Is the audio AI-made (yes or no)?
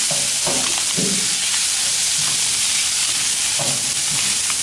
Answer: no